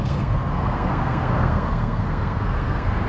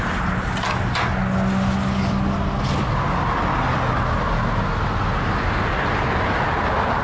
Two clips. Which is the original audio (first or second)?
second